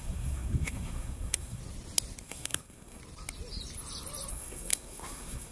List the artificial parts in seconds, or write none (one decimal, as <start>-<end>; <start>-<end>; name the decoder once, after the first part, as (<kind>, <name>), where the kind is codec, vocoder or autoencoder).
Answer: 0.0-1.6 (codec, SNAC); 2.2-3.0; 4.3-5.5